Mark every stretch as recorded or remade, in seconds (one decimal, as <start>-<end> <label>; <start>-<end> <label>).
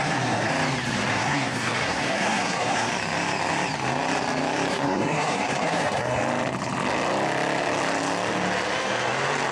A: 0.0-0.5 remade; 0.5-1.1 recorded; 1.1-2.9 remade; 2.9-4.7 recorded; 4.7-6.2 remade; 6.2-9.5 recorded